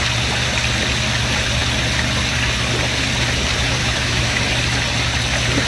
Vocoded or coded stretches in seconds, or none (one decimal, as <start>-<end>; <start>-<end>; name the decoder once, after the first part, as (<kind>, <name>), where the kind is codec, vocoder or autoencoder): 3.8-4.4 (autoencoder, DAC-VAE)